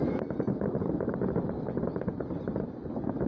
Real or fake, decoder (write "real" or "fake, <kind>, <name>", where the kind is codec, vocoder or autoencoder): fake, vocoder, BigVGAN v2